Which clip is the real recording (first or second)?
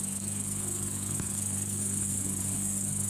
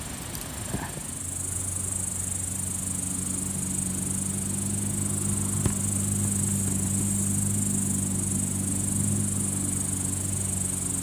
second